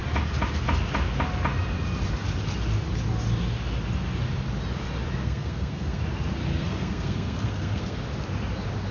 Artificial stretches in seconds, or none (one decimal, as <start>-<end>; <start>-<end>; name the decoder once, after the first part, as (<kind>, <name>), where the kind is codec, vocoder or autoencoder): 5.2-6.0 (codec, SNAC); 6.5-8.0